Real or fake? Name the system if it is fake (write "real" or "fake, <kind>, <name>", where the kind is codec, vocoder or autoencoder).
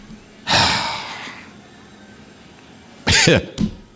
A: real